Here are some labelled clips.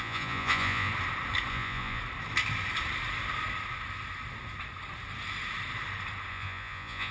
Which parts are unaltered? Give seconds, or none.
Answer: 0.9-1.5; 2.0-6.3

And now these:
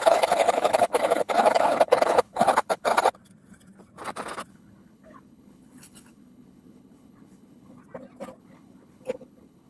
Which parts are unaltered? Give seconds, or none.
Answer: 2.9-4.5; 7.8-8.4

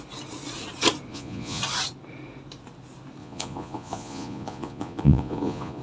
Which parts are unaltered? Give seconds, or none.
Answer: 0.0-1.1; 1.6-3.2

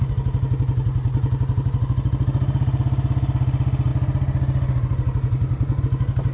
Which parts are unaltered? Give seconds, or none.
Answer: 0.0-6.3

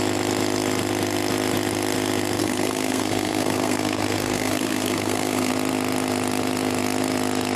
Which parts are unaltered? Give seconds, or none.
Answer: 0.0-2.4; 5.5-7.6

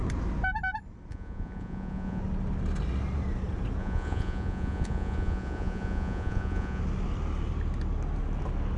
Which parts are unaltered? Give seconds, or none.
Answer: 0.0-1.1; 2.2-3.8; 6.8-8.8

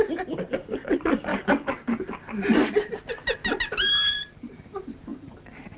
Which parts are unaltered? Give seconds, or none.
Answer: 1.3-4.1